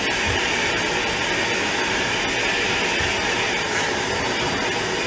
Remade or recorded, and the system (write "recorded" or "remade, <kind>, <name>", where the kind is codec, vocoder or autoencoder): recorded